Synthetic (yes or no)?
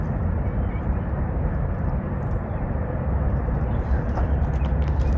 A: yes